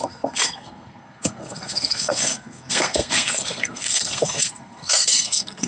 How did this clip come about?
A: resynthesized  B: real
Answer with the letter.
A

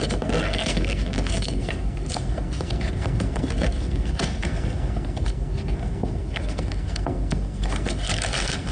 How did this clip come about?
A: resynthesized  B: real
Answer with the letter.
A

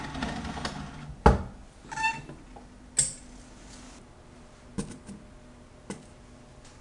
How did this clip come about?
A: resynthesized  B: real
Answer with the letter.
B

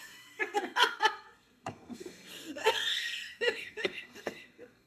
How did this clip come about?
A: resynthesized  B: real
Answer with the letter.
A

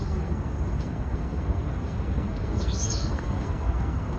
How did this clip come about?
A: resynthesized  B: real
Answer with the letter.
A